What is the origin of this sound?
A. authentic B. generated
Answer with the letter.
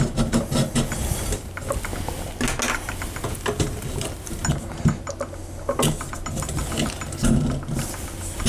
A